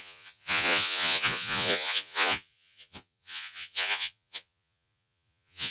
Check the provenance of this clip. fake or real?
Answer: fake